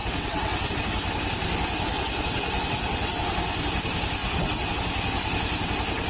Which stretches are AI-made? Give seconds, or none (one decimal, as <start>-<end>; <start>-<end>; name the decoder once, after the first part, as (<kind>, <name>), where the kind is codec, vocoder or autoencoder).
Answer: 0.0-0.7 (vocoder, WaveNeXt); 1.9-3.1; 4.2-4.7